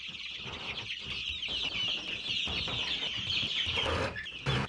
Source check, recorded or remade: recorded